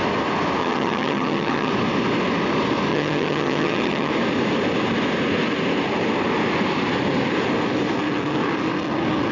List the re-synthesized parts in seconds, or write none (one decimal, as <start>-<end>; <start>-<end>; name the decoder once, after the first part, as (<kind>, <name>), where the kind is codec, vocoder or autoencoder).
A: 0.6-1.7 (vocoder, HiFi-GAN); 2.9-4.1